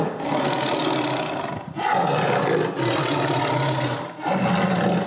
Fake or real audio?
real